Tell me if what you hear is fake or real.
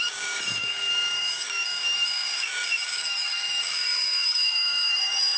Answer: fake